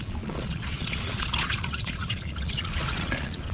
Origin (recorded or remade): remade